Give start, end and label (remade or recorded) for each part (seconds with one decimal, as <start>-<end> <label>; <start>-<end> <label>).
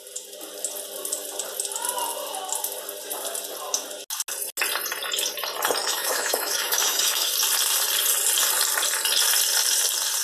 0.0-5.8 recorded; 5.8-7.3 remade; 7.3-10.2 recorded